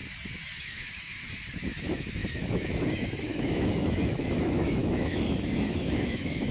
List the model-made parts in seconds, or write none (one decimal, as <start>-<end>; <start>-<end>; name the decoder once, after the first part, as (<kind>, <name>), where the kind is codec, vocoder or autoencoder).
0.6-1.2 (autoencoder, DAC-VAE); 1.8-6.5